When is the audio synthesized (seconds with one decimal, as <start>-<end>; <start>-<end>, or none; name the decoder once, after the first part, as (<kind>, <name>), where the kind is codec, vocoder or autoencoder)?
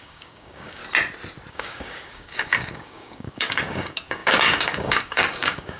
0.0-0.8 (codec, DAC); 1.5-5.8